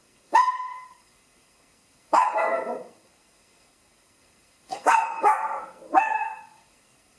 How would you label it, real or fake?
fake